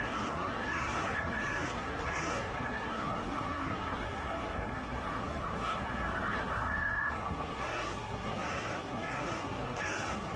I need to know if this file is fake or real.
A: fake